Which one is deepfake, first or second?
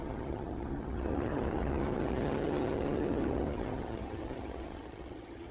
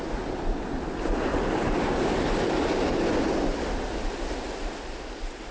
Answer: first